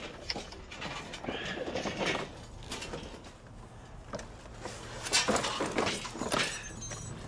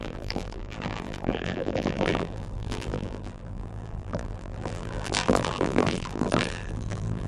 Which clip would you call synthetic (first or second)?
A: second